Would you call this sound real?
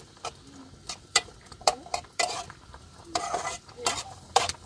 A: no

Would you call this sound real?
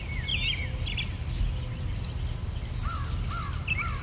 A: yes